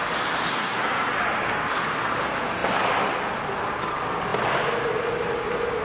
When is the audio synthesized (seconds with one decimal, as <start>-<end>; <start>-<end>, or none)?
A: 0.5-1.1

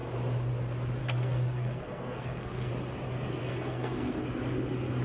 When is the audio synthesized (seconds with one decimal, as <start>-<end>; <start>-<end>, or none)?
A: 1.0-2.7; 3.4-4.2

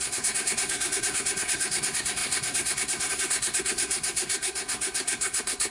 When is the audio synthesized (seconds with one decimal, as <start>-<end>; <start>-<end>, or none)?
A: 0.0-5.7

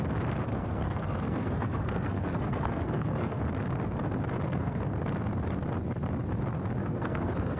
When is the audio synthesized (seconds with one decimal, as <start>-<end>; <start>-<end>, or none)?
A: 0.5-3.4; 4.4-5.0; 6.8-7.6

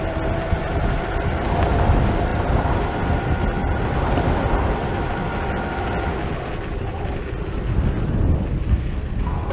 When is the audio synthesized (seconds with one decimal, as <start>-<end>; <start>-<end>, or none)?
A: 8.7-9.5

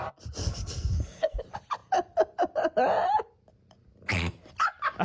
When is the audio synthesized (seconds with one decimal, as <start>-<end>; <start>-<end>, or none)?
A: 0.4-1.4

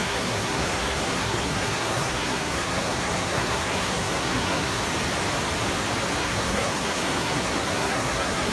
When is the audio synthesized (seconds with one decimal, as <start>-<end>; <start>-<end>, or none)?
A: 0.0-4.8; 6.2-8.5

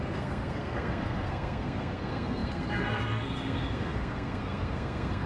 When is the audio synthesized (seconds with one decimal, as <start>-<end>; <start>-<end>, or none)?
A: 0.0-5.3